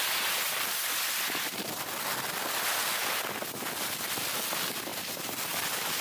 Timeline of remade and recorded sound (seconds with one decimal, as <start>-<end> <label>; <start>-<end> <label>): 0.0-4.9 recorded; 4.9-6.0 remade

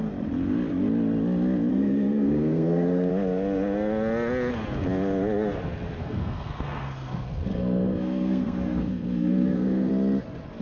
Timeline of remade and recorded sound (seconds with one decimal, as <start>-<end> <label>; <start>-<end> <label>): 0.0-1.7 recorded; 1.7-3.1 remade; 3.1-6.0 recorded; 6.0-9.9 remade; 9.9-10.6 recorded